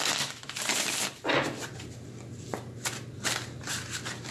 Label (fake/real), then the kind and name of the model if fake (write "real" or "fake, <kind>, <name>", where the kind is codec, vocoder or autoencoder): real